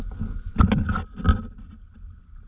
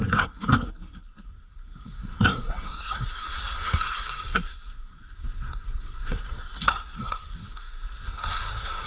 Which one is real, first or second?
first